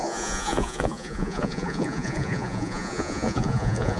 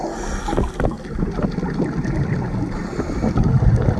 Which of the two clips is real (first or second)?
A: second